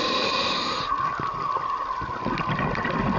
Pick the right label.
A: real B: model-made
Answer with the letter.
A